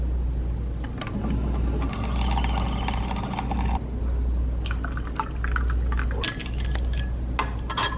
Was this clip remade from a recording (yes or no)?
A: no